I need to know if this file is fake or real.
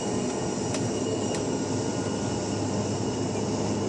real